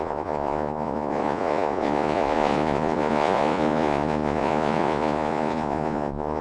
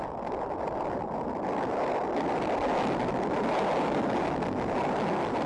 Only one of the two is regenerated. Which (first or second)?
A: first